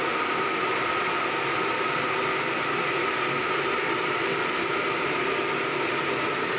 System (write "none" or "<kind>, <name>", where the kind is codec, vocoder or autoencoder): none